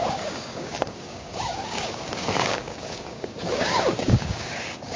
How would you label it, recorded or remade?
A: remade